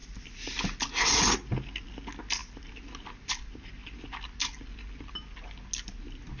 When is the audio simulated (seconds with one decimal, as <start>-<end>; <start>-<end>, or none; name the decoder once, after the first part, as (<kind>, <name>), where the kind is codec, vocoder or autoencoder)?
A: none